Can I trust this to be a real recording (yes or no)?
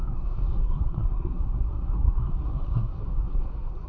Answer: no